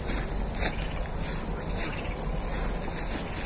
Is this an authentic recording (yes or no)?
yes